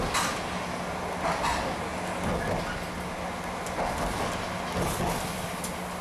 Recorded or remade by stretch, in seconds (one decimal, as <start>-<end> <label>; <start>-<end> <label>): 0.0-6.0 recorded